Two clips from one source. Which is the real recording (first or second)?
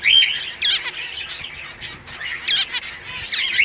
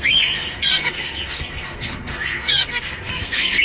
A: first